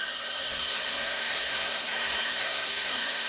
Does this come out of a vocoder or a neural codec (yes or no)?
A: yes